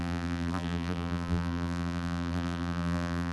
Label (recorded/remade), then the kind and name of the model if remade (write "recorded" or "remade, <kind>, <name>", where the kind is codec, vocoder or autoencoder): remade, vocoder, BigVGAN v2